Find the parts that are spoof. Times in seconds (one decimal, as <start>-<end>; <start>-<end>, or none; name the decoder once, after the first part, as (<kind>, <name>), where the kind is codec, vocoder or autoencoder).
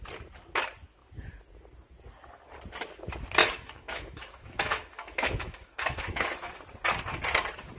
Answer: 3.4-6.5 (autoencoder, DAC-VAE)